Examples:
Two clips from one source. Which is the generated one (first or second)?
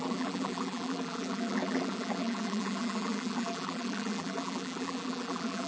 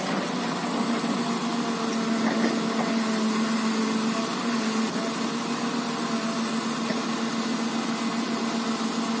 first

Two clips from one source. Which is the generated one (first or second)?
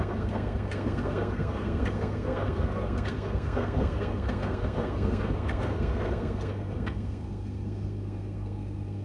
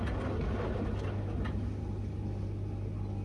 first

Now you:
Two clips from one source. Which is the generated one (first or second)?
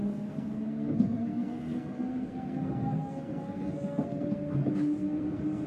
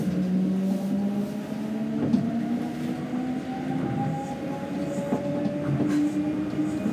first